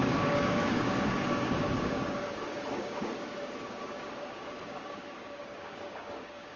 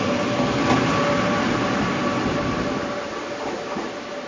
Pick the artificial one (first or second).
first